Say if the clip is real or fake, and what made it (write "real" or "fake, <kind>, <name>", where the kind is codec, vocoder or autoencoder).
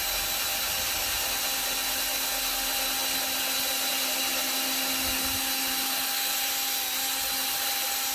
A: real